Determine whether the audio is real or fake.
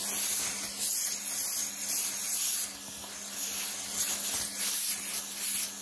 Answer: real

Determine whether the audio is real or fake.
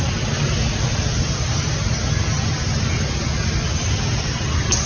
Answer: real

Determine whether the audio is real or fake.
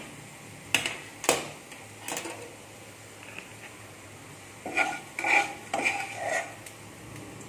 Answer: real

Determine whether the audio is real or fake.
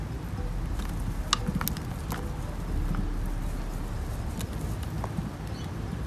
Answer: real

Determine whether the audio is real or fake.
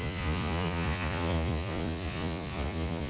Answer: fake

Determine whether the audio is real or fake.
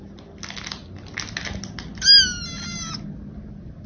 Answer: real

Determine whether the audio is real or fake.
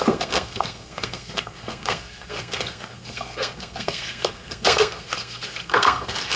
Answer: fake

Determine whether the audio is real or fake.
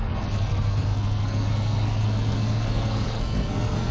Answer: fake